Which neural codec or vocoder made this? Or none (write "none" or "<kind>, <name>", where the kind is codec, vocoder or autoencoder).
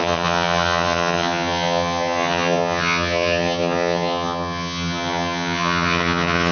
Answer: vocoder, HiFi-GAN